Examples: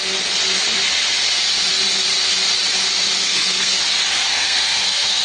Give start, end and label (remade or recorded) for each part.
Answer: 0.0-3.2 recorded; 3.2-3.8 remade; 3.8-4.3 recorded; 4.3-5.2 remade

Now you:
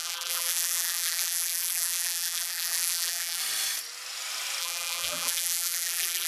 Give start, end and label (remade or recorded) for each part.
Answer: 0.0-3.4 remade; 3.4-4.6 recorded; 4.6-6.3 remade